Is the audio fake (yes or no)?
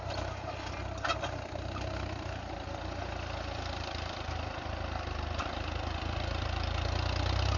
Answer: no